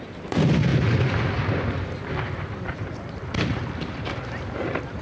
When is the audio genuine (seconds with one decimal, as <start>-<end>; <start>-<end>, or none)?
none

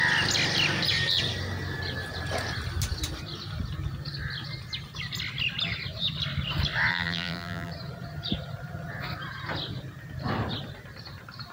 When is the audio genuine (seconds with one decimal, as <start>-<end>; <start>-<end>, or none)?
0.0-6.9; 7.7-11.5

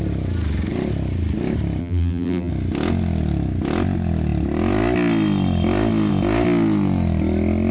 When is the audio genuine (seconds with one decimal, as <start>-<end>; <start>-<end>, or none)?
0.0-1.8; 2.5-7.7

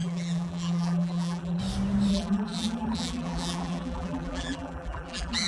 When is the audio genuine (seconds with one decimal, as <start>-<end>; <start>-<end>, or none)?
1.6-2.1

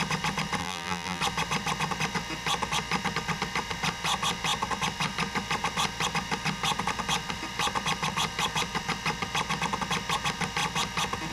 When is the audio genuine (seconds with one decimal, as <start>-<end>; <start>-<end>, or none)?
0.0-0.6; 1.2-11.3

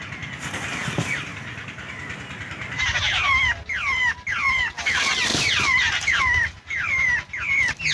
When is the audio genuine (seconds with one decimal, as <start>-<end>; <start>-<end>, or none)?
0.0-5.3; 6.2-7.9